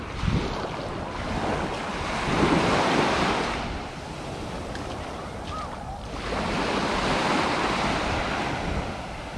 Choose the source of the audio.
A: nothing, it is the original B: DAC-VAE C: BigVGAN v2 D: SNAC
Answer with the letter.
A